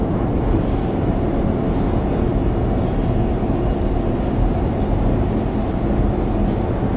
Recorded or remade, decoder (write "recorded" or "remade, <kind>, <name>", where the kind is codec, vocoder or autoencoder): recorded